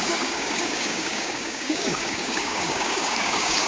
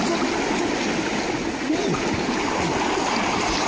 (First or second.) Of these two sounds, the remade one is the first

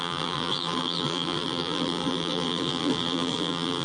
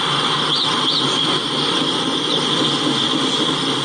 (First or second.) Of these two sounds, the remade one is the first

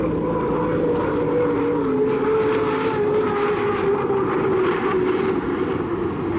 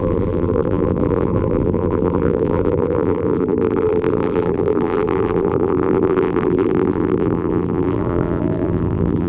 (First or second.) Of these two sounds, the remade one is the second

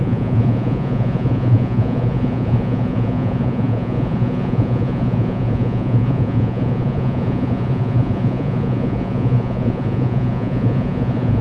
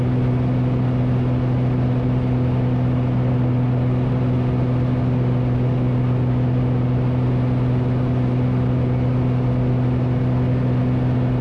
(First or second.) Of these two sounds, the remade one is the first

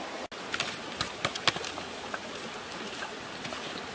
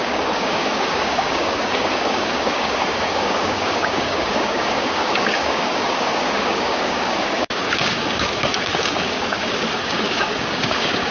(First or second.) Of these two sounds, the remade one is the second